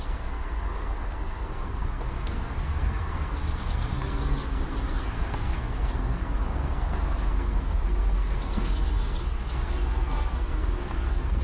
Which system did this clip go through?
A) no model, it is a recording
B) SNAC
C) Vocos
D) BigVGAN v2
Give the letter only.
B